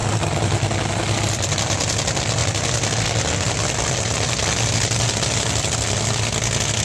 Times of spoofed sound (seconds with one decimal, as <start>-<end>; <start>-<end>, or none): none